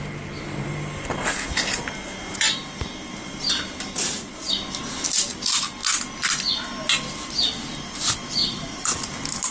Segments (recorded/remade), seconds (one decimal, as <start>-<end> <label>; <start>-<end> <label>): 0.0-3.9 recorded; 3.9-4.5 remade; 4.5-8.4 recorded; 8.4-9.0 remade; 9.0-9.5 recorded